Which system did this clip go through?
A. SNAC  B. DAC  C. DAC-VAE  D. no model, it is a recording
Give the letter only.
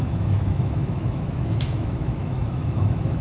C